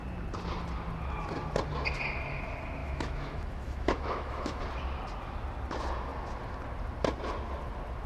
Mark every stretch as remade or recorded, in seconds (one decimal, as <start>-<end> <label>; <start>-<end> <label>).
0.0-2.8 recorded; 2.8-4.6 remade; 4.6-8.1 recorded